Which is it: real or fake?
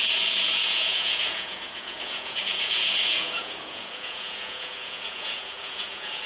fake